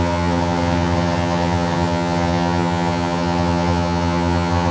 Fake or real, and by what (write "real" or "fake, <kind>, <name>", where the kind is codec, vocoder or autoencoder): fake, vocoder, HiFi-GAN